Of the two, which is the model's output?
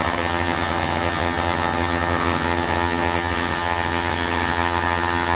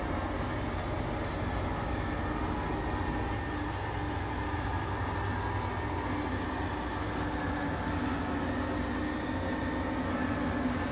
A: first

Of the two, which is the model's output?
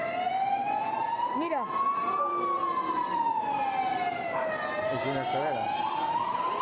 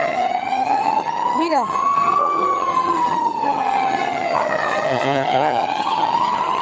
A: second